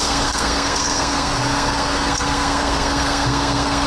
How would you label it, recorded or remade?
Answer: remade